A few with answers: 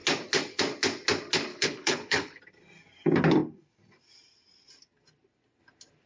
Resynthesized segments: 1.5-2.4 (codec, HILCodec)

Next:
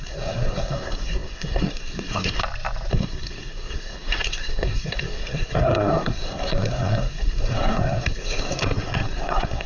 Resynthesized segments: 0.0-2.4 (codec, SNAC); 2.9-9.7

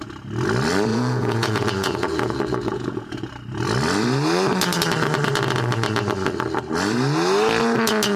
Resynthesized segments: 0.9-3.3 (vocoder, Vocos)

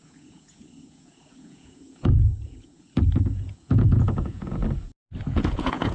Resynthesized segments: 0.0-4.6 (vocoder, Vocos); 5.3-5.9

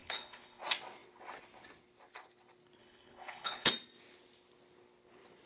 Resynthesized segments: 0.0-0.6 (codec, HILCodec); 2.8-3.7